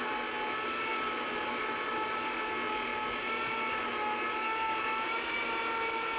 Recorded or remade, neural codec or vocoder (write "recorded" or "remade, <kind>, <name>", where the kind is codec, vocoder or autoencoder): recorded